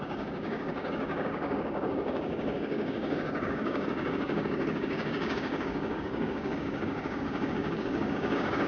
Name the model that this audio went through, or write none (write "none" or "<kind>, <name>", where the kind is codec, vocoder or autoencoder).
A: codec, DAC